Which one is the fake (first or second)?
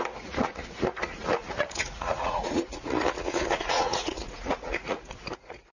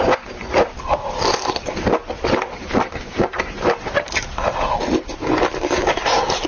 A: first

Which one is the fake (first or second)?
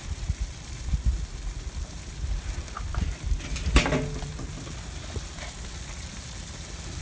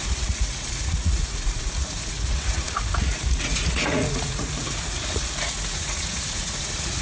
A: second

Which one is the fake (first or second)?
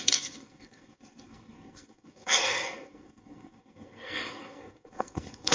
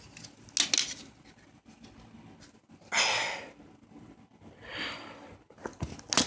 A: first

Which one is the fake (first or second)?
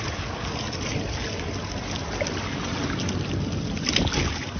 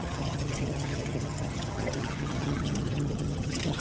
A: second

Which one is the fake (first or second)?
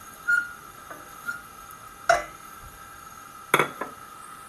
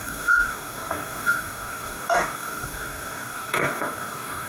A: second